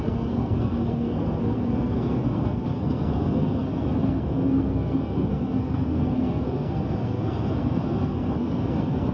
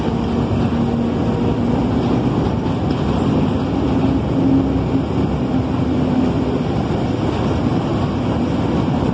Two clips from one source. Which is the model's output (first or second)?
first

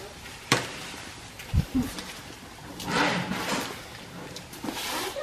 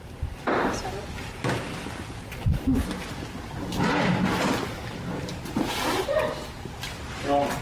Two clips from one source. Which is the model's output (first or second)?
first